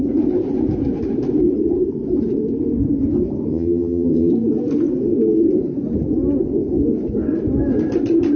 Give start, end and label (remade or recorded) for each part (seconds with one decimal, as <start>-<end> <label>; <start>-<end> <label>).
0.0-3.5 recorded; 3.5-4.3 remade; 4.3-8.4 recorded